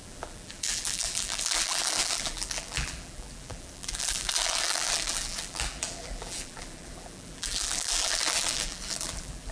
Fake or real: fake